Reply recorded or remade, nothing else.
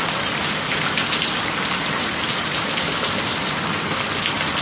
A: recorded